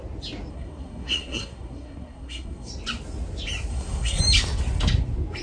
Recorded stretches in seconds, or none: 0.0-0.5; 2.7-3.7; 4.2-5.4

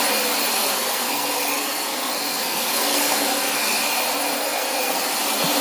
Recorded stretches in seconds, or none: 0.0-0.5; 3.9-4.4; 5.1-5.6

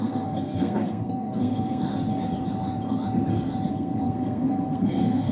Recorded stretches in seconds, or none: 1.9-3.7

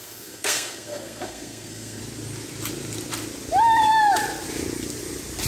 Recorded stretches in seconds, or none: 2.0-5.5

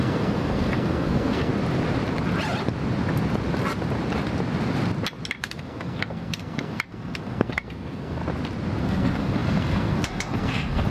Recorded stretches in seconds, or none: 1.5-5.4; 8.2-8.8

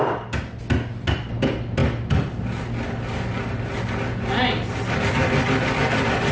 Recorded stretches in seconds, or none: 0.0-6.3

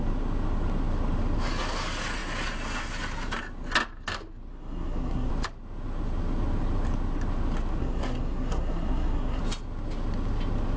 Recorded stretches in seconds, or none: 0.0-4.5; 5.3-7.8; 9.4-10.8

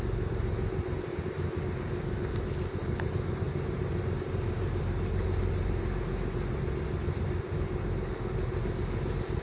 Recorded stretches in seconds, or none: 0.0-9.4